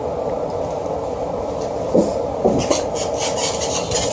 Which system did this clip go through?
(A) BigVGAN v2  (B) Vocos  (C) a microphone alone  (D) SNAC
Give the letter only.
C